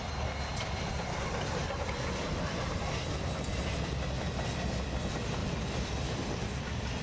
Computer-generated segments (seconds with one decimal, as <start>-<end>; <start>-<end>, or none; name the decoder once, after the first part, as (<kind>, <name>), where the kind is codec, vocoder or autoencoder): 5.4-6.5 (vocoder, BigVGAN v2)